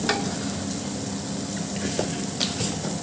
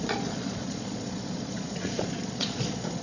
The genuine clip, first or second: first